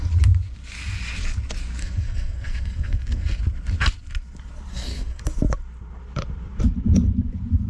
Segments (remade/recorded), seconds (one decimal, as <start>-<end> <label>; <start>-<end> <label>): 0.0-1.8 recorded; 1.8-3.4 remade; 3.4-4.7 recorded; 4.7-5.2 remade; 5.2-7.7 recorded